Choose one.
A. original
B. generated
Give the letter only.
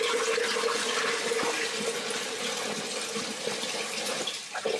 A